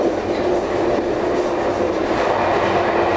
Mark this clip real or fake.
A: real